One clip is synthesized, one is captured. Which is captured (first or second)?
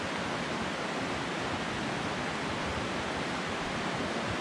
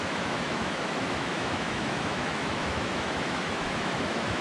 first